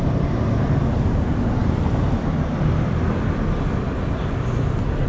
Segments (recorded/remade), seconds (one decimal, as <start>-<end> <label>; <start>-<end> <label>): 0.0-5.1 recorded